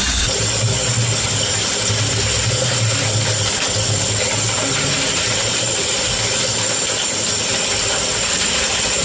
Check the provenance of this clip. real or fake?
real